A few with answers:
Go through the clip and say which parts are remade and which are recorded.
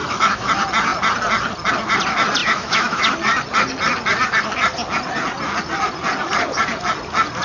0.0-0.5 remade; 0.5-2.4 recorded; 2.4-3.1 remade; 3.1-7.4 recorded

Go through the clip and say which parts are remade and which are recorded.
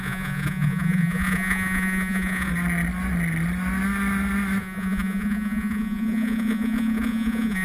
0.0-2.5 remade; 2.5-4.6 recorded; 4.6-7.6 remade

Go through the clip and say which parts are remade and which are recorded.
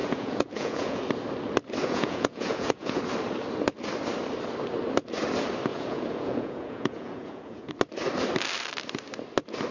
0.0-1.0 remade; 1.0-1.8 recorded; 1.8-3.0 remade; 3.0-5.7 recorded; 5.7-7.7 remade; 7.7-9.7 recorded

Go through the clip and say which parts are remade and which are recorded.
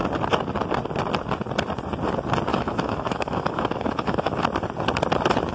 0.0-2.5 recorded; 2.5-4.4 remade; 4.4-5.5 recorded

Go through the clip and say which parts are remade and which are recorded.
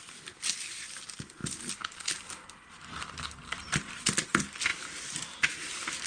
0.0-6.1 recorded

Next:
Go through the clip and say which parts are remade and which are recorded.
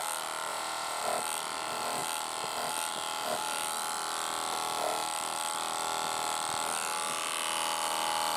0.0-0.5 recorded; 0.5-1.0 remade; 1.0-8.4 recorded